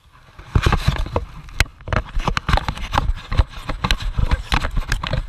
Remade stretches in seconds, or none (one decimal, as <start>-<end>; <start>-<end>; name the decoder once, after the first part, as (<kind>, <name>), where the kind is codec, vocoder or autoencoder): 4.2-5.3 (vocoder, BigVGAN v2)